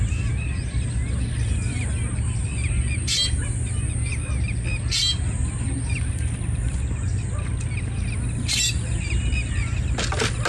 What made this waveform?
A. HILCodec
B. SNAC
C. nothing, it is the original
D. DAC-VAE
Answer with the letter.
C